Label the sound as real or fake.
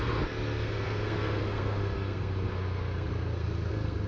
fake